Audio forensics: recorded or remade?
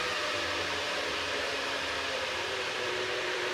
remade